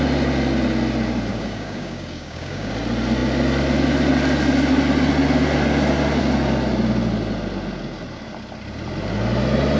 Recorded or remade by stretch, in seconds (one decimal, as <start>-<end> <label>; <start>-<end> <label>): 0.0-1.3 recorded; 1.3-2.7 remade; 2.7-9.8 recorded